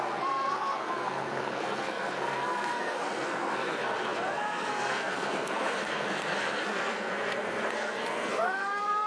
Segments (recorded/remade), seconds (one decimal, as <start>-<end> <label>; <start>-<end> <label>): 0.0-9.1 remade